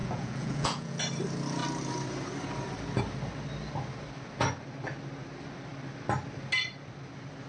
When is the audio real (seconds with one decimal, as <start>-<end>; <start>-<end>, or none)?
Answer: 1.0-7.5